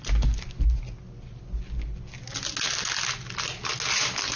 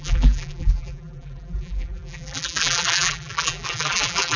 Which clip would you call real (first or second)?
first